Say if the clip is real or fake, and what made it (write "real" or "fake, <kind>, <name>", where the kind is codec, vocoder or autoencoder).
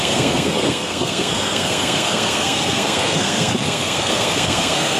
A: fake, codec, SNAC